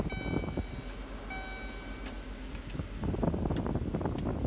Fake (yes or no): no